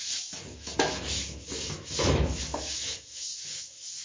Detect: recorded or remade remade